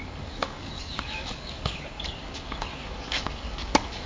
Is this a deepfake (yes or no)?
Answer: yes